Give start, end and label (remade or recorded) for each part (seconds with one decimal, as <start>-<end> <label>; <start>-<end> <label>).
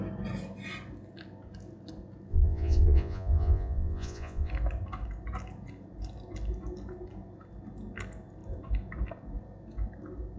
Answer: 0.0-2.3 recorded; 2.3-4.5 remade; 4.5-10.4 recorded